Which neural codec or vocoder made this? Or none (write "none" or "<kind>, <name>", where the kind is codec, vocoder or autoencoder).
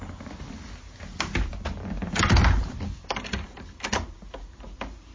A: none